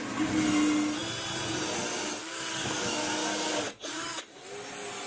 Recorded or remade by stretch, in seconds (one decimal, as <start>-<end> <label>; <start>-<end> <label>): 0.0-2.2 recorded; 2.2-4.4 remade; 4.4-5.1 recorded